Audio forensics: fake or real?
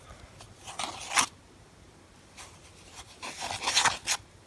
real